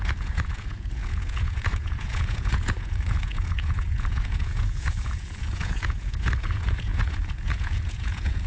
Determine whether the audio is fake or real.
fake